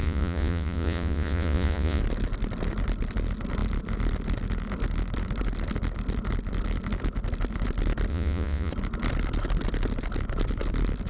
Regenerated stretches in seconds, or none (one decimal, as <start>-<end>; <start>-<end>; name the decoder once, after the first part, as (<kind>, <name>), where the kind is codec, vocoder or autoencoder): 0.0-2.0 (vocoder, Vocos); 8.1-8.7